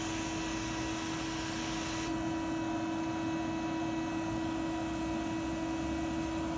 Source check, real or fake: real